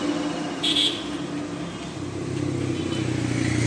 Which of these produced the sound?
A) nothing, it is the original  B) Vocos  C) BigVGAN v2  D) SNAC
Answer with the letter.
A